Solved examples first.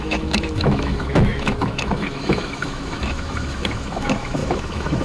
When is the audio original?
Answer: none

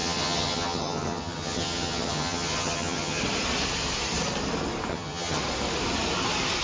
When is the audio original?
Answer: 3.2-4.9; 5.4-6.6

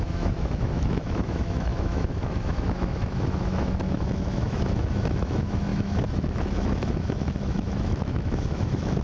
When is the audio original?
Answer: none

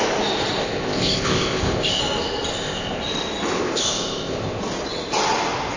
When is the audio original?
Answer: 0.0-0.6; 2.0-2.5; 3.0-3.6; 4.6-5.8